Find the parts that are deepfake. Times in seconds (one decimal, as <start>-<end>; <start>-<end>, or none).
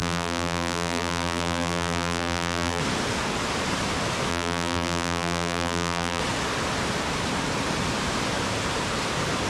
0.0-2.8; 4.3-6.2